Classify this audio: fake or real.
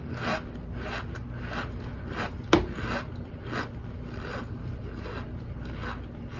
real